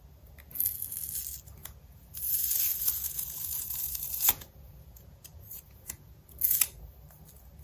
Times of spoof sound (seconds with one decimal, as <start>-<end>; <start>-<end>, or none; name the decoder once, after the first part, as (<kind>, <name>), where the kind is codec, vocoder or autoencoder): 1.6-6.2 (vocoder, Vocos)